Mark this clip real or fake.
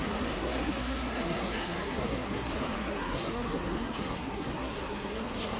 fake